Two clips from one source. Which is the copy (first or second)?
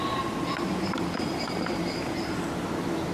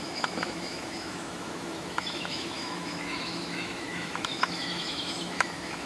second